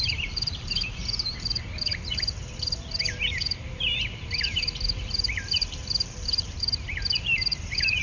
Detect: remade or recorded remade